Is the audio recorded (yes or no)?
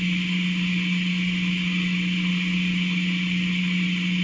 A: yes